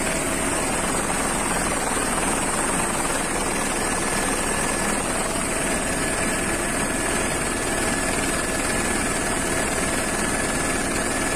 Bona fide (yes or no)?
yes